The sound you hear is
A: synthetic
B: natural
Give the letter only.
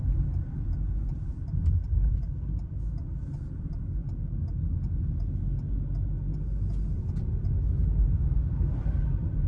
B